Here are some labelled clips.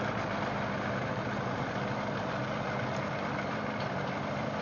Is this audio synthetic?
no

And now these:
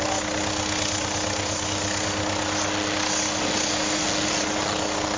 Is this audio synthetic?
no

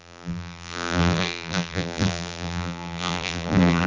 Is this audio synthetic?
yes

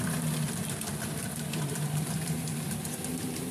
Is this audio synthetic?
yes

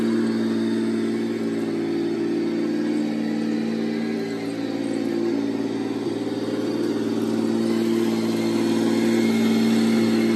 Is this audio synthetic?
no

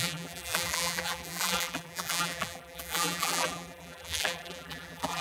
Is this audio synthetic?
yes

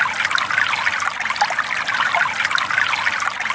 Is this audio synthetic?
no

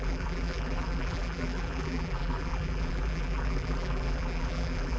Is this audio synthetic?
yes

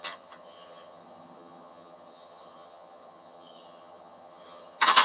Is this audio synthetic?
yes